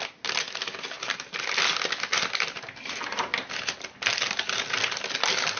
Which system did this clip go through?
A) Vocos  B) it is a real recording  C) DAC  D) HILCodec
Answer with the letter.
B